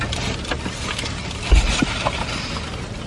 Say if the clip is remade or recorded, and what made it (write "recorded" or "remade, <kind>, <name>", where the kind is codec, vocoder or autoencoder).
recorded